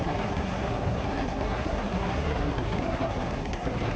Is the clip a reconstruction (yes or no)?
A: yes